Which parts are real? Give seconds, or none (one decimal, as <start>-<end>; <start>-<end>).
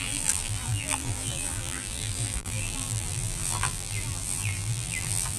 none